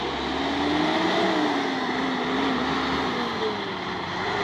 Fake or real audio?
real